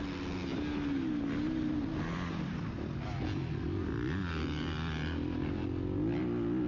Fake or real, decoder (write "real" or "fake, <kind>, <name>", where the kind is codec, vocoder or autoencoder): real